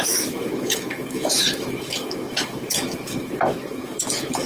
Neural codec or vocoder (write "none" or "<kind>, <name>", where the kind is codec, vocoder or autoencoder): autoencoder, DAC-VAE